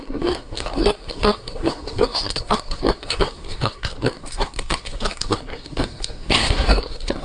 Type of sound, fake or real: fake